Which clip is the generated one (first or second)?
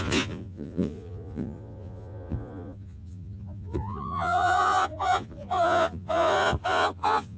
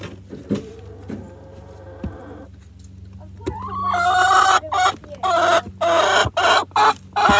first